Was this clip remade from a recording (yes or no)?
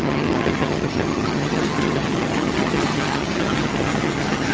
yes